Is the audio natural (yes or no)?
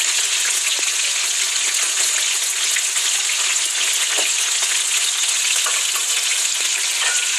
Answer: no